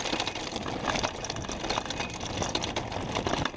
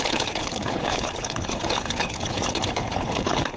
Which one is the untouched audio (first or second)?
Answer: first